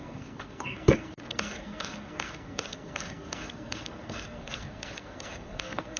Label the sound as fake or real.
fake